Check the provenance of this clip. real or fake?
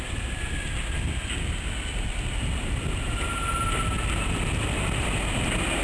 real